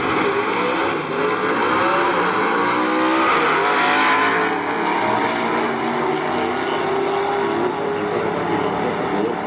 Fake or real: real